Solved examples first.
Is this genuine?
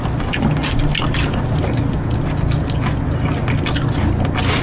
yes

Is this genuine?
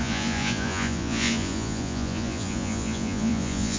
no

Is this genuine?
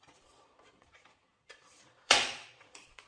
no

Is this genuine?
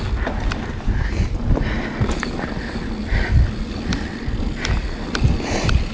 yes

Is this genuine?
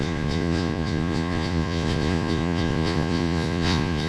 no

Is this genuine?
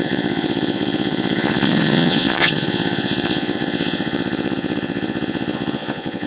no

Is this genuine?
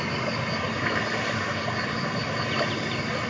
yes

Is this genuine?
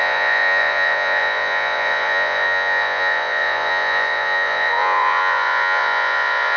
no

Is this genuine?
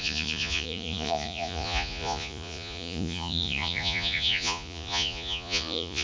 no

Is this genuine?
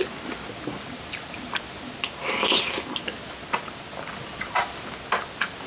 yes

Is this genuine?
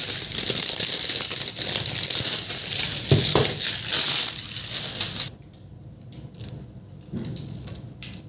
yes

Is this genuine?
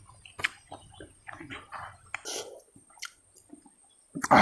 yes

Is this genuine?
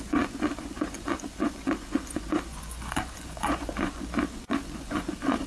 no